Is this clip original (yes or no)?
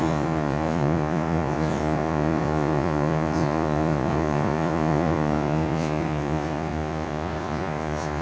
no